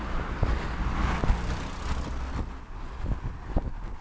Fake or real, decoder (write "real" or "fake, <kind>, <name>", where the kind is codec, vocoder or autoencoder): real